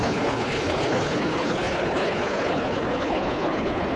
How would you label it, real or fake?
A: fake